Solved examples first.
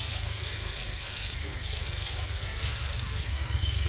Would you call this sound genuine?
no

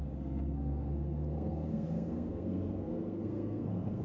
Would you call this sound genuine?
no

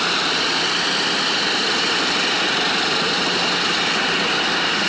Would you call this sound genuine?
yes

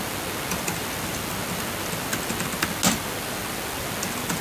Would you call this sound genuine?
yes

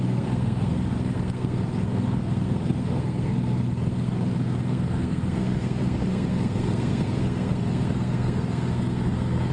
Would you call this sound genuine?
no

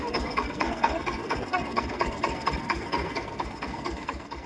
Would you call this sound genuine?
no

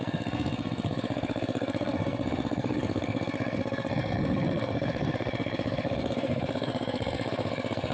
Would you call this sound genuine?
no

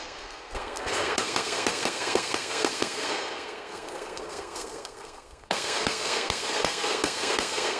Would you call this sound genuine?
no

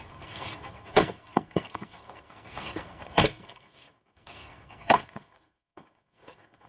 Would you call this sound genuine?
no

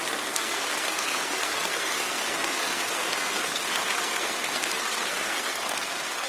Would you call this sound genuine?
no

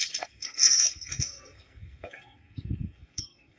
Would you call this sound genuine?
no